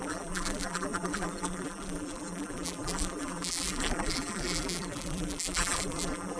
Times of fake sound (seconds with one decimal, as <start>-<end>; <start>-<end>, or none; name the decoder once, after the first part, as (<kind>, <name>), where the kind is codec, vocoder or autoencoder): 0.0-6.4 (vocoder, BigVGAN v2)

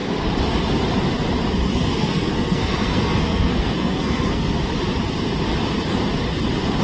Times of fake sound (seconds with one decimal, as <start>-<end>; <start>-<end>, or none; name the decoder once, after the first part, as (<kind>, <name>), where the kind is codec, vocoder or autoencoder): 2.0-4.5 (codec, SNAC)

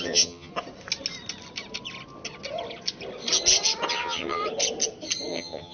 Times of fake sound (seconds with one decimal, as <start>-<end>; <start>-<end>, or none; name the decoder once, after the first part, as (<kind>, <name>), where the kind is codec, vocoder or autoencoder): 0.0-0.5 (vocoder, HiFi-GAN); 3.9-4.4; 5.3-5.7

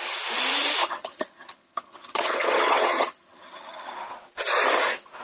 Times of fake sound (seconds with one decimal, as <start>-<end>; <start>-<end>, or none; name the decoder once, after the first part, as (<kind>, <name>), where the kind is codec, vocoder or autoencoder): 0.8-3.9 (vocoder, HiFi-GAN)